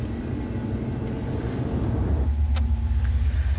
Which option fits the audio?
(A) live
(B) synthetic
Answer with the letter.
A